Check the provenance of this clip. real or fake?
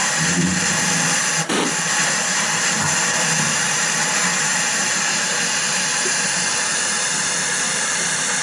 fake